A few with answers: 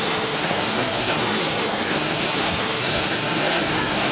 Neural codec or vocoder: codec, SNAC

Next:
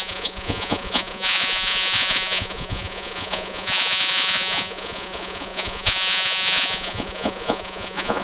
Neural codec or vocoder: vocoder, Vocos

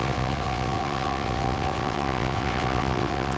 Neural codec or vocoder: vocoder, WaveNeXt